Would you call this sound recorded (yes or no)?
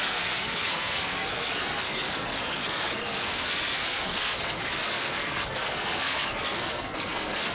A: no